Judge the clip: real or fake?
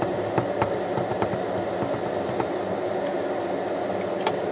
real